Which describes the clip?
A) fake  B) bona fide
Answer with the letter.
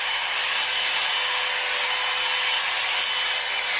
B